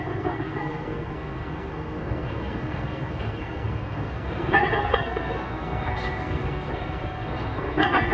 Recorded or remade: remade